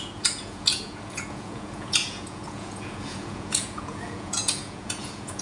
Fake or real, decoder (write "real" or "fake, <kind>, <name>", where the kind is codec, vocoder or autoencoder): fake, vocoder, Vocos